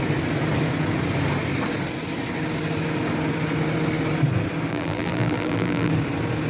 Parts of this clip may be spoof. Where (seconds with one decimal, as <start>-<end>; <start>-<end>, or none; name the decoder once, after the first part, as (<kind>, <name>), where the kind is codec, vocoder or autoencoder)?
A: 4.7-5.9 (vocoder, BigVGAN v2)